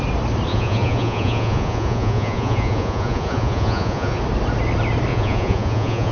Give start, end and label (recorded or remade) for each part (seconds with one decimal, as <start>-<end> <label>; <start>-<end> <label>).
0.0-0.5 recorded; 0.5-4.2 remade; 4.2-5.1 recorded; 5.1-6.1 remade